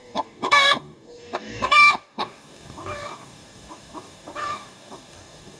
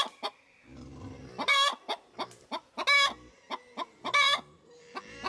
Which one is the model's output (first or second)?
first